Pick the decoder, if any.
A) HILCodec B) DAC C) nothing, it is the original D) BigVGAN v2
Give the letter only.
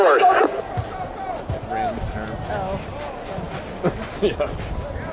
C